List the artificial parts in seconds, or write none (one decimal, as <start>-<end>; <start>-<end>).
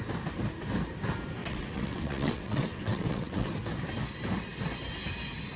1.4-3.5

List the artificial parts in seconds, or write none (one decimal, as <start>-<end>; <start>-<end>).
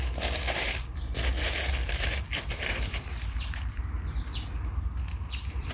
2.5-3.8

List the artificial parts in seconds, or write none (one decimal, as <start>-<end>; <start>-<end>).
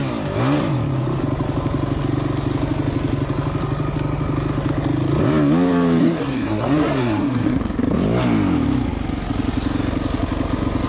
6.0-7.6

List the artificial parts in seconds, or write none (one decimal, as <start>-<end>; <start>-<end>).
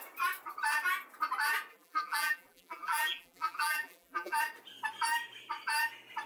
1.7-4.4